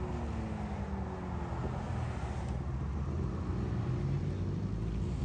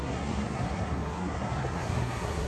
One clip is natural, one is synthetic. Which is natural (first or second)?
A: first